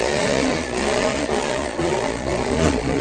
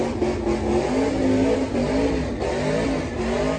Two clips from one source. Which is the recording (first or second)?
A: second